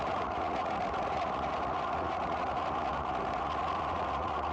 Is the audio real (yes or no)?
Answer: no